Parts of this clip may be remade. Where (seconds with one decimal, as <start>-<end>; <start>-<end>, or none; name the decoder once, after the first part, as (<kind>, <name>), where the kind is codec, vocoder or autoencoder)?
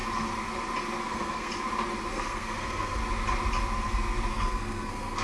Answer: 1.0-1.5 (codec, SNAC); 2.1-3.0; 4.3-5.2